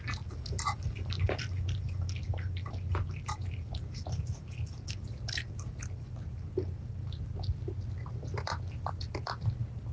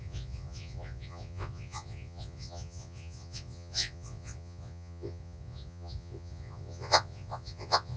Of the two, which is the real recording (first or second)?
first